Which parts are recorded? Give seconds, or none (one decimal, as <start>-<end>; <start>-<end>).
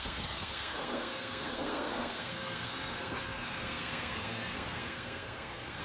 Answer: none